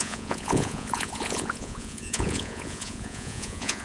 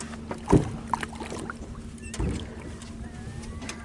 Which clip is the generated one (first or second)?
first